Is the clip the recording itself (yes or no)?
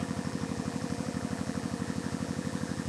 no